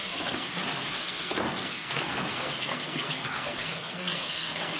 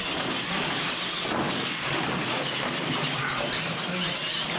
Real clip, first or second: second